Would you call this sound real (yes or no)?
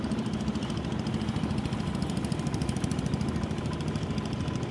yes